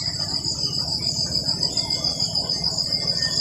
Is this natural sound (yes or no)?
yes